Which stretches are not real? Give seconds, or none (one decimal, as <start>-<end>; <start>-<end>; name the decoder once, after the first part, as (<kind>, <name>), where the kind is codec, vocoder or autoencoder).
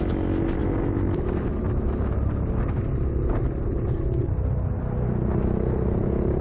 none